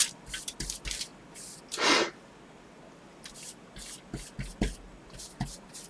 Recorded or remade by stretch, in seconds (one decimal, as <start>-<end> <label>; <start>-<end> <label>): 0.0-5.9 recorded